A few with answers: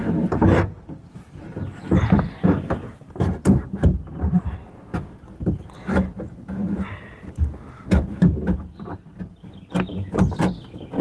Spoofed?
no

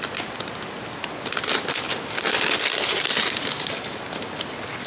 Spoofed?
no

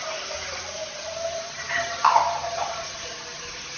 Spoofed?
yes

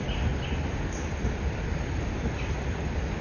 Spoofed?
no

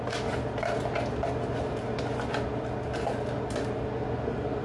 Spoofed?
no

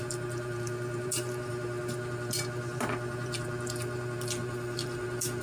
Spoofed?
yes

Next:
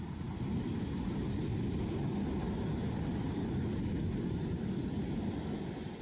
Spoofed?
no